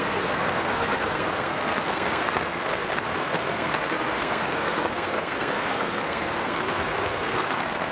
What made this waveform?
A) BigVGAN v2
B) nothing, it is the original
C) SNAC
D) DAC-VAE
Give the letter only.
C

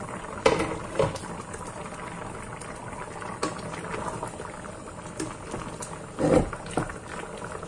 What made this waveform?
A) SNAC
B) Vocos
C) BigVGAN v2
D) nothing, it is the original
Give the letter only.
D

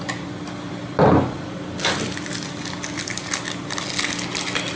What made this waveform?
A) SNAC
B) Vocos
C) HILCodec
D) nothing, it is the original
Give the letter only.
D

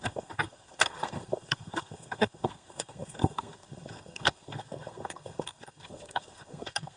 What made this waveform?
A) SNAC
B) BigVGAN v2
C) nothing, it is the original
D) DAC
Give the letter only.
A